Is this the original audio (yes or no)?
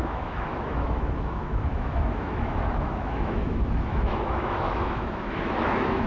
no